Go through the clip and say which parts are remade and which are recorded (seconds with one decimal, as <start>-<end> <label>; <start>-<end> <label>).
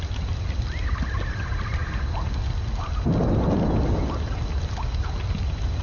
0.0-5.8 recorded